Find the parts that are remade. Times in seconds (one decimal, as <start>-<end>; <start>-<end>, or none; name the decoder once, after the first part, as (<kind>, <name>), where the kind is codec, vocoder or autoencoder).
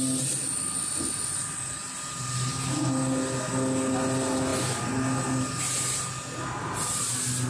none